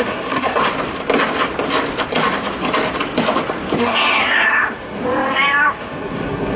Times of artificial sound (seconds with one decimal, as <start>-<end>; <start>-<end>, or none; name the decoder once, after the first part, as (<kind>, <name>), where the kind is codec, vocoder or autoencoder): 0.0-0.6 (codec, SNAC); 3.8-5.0; 5.7-6.6